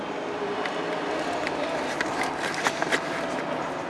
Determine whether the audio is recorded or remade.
recorded